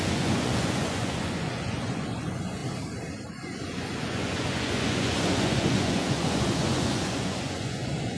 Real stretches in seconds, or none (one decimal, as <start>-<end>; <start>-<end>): 2.6-3.3

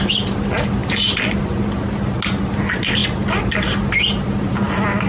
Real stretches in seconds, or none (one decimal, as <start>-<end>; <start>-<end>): 0.0-5.1

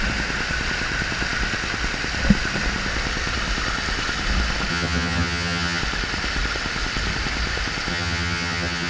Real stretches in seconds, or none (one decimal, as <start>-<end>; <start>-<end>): 0.0-4.7; 5.8-7.9

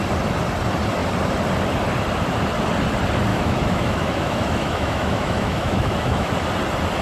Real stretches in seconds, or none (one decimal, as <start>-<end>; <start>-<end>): 0.0-3.3; 6.3-7.0

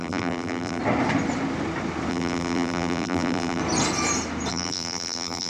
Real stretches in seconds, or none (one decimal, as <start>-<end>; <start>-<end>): 0.8-2.1; 3.6-4.5

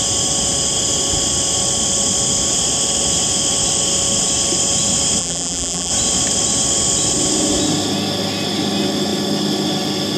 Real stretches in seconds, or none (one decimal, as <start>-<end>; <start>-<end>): 0.0-5.2; 5.9-10.2

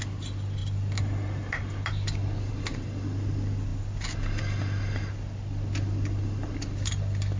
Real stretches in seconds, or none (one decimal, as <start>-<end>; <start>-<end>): 0.0-7.4

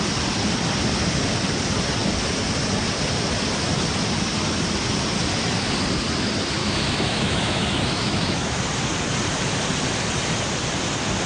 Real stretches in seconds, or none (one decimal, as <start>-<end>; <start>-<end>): 0.0-6.6; 8.6-11.3